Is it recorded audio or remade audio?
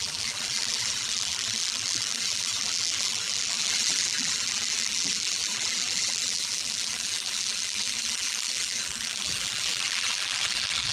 remade